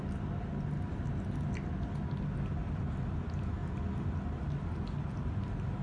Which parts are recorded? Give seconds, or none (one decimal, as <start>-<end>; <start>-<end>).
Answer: 0.0-2.6; 3.2-5.8